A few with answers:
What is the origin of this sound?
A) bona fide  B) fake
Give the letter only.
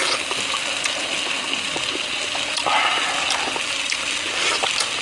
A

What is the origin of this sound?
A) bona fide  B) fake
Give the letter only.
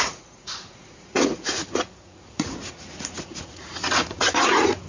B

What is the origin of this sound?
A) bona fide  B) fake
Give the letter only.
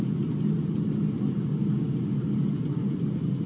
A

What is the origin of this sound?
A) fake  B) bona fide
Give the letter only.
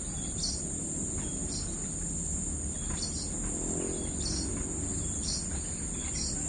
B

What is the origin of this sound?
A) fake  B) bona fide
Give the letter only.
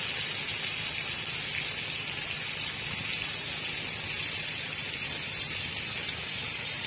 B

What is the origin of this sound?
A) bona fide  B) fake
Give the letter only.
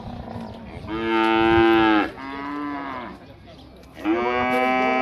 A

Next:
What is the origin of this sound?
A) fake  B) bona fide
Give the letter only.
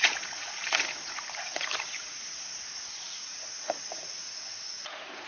A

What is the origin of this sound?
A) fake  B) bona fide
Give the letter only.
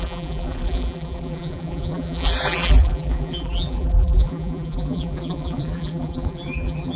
A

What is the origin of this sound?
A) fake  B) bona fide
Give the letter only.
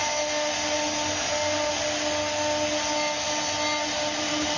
B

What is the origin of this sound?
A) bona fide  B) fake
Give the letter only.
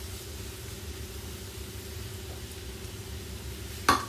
A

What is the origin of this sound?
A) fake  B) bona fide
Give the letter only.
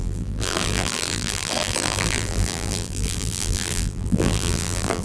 A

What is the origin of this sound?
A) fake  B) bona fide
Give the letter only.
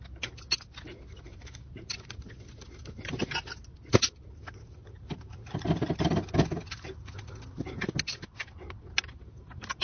B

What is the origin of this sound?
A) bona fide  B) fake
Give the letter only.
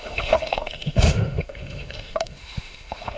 B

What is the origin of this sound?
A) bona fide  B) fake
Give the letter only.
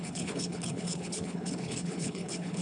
B